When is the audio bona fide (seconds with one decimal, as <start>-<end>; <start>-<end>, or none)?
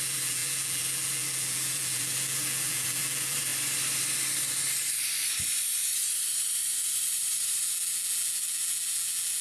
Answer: 3.5-7.6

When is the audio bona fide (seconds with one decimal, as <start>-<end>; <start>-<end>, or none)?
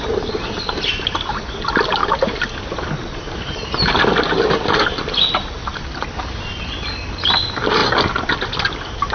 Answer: 0.0-9.1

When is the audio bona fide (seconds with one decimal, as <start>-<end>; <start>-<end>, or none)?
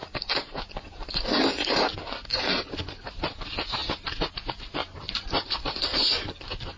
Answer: 0.6-2.3; 3.2-4.8; 6.1-6.8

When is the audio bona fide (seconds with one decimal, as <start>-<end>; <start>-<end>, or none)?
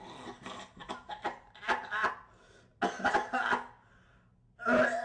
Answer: 0.0-0.8; 2.1-5.0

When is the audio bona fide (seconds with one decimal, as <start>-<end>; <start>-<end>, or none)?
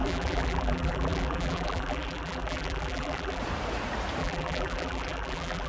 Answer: 3.4-4.2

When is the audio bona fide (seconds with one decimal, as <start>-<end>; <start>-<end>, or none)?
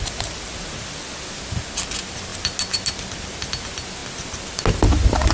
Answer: 0.0-2.3; 3.4-5.3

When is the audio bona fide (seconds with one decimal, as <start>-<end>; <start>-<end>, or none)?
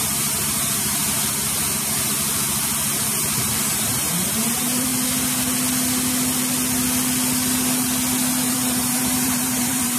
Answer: 1.0-3.8; 4.9-8.5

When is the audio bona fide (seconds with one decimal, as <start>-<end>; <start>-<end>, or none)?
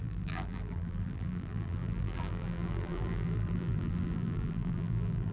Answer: none